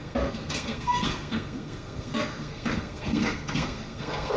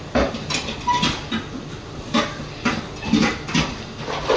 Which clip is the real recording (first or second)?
second